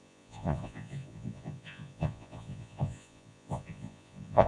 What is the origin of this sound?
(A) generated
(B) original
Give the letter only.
A